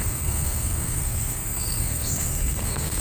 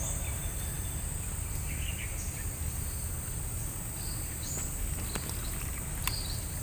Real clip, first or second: second